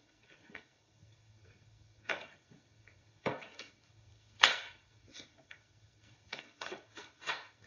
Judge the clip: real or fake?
fake